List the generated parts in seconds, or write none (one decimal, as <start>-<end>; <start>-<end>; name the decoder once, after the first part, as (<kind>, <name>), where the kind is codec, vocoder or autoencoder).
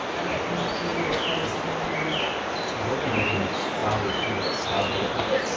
none